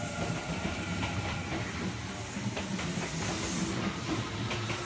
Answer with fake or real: real